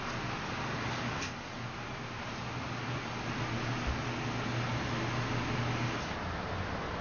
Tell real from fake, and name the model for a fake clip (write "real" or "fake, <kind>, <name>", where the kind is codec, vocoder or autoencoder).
real